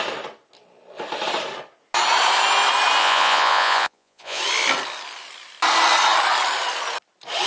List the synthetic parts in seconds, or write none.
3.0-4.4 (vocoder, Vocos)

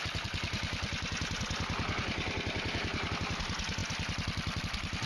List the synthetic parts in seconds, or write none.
none

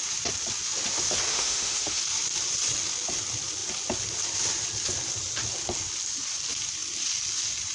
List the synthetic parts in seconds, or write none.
1.3-2.0 (autoencoder, DAC-VAE)